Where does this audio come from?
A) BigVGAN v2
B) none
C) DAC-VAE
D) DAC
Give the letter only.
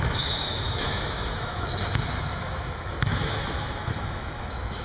C